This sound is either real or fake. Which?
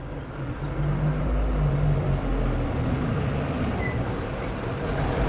real